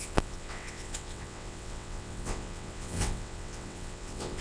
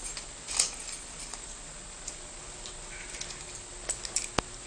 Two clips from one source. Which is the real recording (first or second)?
second